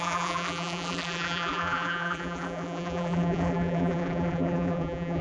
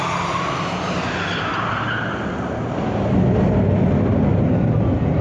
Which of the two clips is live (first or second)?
second